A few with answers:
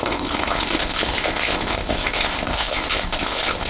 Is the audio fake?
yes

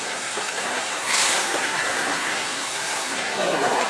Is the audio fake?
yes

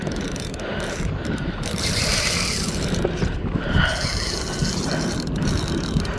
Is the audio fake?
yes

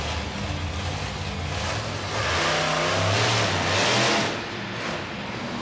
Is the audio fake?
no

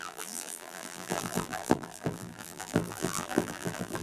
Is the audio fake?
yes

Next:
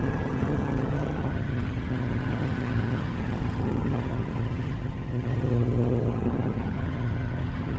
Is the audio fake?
yes